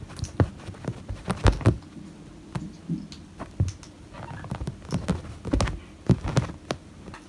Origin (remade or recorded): recorded